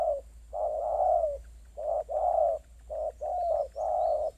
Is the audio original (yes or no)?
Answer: yes